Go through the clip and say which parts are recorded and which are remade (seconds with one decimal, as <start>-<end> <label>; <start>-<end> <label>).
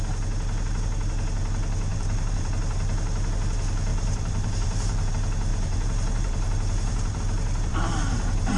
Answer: 0.0-1.9 recorded; 1.9-2.5 remade; 2.5-3.9 recorded; 3.9-5.1 remade; 5.1-5.5 recorded; 5.5-7.2 remade; 7.2-7.7 recorded; 7.7-8.6 remade